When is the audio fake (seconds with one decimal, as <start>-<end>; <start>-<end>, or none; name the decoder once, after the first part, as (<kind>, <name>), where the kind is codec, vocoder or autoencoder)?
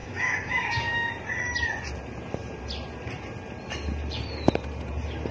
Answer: 0.0-1.1 (codec, DAC)